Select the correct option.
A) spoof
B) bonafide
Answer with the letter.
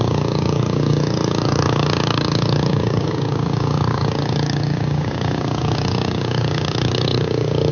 A